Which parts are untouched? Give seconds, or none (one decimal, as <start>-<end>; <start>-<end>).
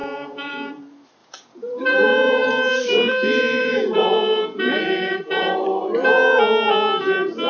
0.7-1.2; 2.5-3.6; 5.6-7.5